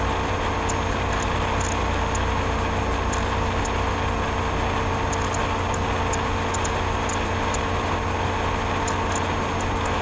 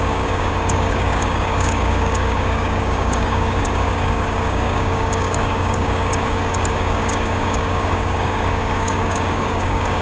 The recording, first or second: first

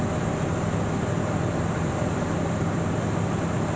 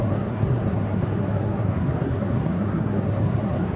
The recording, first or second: first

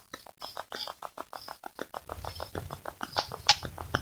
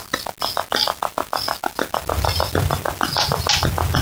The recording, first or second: second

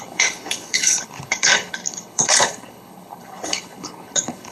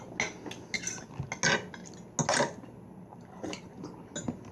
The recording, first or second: second